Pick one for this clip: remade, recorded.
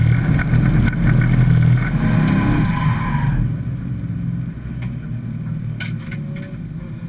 recorded